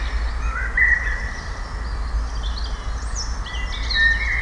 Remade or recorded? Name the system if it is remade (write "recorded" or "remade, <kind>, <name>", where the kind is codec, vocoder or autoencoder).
recorded